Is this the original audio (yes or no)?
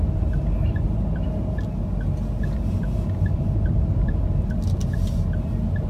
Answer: yes